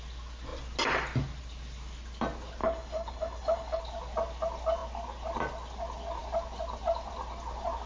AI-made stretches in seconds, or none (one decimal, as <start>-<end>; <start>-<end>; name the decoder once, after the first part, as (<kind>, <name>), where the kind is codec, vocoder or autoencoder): 2.6-3.8 (codec, HILCodec)